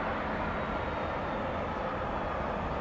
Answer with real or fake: real